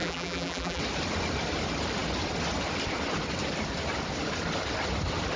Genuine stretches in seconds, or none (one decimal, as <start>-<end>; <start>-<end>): 0.8-5.4